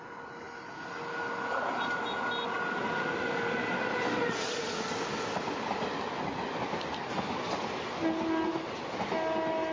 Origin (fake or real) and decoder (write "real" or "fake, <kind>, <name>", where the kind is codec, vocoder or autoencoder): real